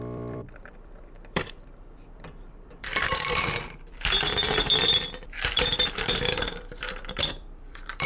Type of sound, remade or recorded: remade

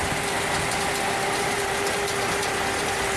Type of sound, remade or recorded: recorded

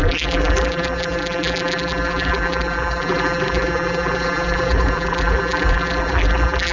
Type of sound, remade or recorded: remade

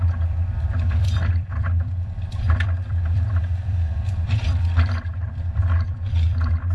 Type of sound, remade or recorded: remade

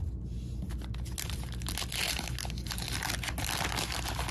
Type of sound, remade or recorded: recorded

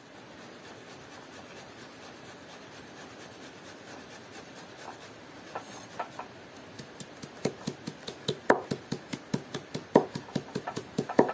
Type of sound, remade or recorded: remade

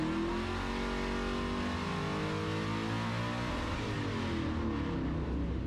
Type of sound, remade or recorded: recorded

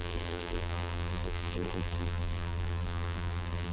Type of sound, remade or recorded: remade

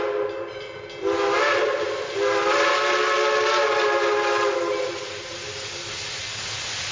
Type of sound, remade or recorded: recorded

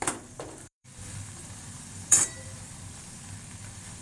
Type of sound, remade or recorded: remade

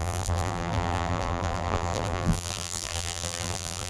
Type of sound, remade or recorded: remade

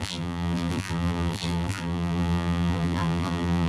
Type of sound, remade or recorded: remade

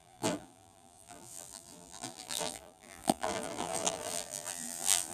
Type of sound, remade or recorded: remade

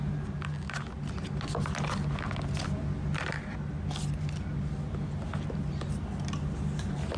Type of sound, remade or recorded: recorded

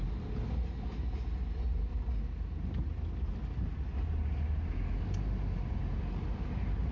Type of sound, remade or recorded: recorded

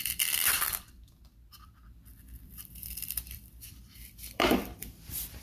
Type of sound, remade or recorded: remade